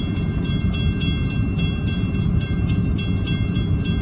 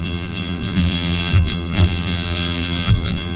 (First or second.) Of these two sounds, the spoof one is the second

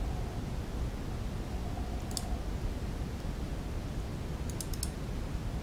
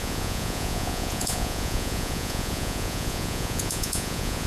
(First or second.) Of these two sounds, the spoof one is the second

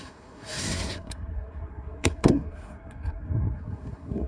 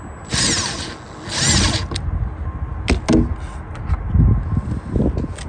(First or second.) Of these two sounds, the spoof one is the first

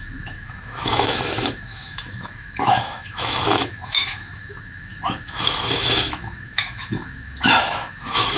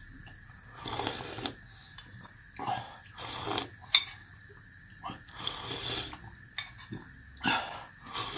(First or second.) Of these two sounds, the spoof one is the first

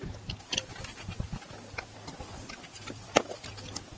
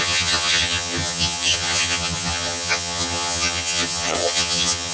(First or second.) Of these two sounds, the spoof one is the second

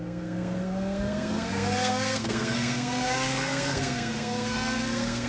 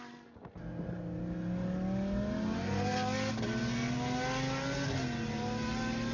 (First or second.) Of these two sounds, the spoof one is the first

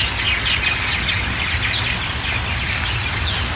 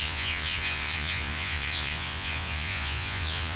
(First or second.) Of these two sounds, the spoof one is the second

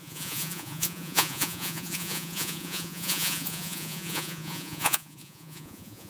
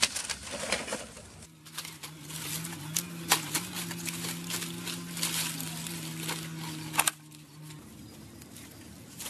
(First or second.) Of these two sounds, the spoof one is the first